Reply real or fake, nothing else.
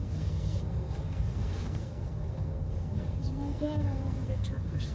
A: fake